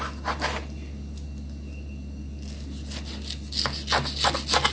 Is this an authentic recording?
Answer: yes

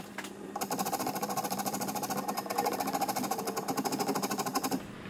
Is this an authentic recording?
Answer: no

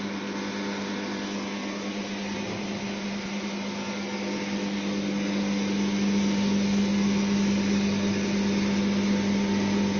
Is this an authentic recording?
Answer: yes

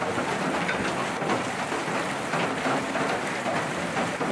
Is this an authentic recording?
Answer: no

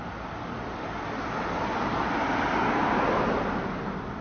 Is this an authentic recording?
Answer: yes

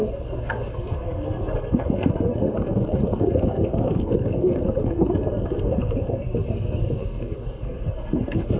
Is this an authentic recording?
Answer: no